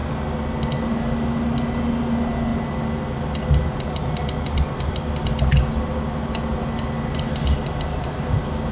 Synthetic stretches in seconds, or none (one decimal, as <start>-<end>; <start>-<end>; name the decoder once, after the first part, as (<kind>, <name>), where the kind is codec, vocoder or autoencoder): none